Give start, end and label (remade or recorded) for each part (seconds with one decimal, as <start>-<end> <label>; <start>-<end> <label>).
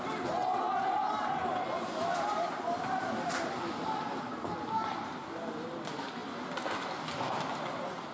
0.0-8.1 recorded